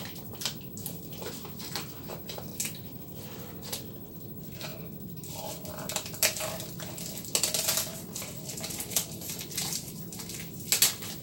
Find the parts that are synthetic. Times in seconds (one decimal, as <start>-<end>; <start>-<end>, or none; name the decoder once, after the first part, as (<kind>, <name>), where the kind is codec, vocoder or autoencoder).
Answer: 7.9-10.4 (vocoder, BigVGAN v2)